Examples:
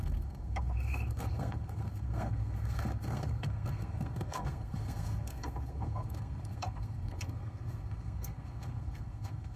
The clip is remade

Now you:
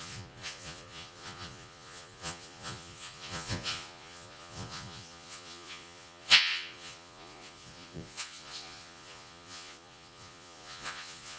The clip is remade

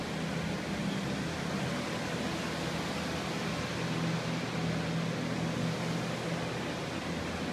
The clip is recorded